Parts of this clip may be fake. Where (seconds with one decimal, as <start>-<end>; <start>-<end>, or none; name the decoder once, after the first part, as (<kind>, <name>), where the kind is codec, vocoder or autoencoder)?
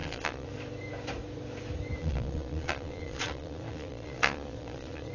0.0-0.5 (vocoder, Vocos); 2.0-5.1